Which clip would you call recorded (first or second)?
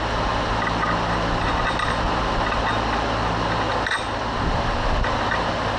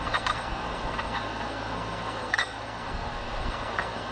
first